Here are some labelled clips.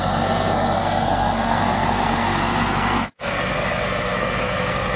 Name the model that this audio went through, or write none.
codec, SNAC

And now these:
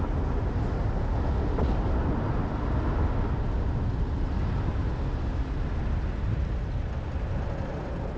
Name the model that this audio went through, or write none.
none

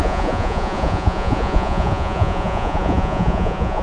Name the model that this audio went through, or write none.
vocoder, Vocos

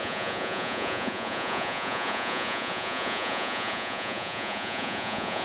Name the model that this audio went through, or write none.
vocoder, Vocos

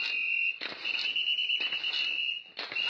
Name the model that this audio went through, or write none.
none